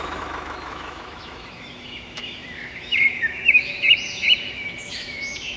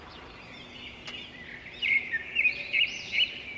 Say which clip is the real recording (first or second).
second